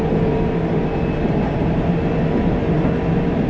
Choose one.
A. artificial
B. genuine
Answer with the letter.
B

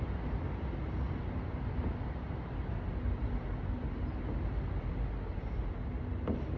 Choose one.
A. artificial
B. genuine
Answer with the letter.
B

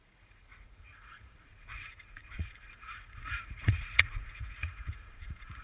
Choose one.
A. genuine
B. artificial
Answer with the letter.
B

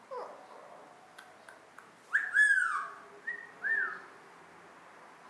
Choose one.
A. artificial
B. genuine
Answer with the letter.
B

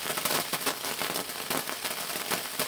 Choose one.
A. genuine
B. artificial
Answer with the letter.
A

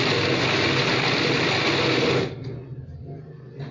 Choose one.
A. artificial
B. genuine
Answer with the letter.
B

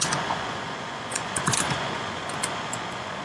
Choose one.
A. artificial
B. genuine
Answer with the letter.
A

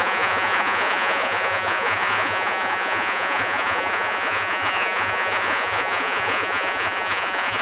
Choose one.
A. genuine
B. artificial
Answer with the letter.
B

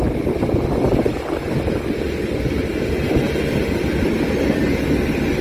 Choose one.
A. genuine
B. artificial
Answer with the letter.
A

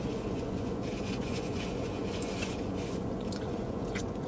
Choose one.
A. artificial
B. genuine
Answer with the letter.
A